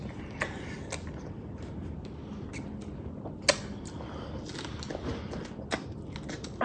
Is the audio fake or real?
real